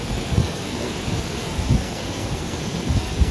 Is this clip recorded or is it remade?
remade